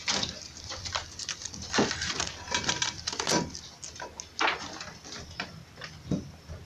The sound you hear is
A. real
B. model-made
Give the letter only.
A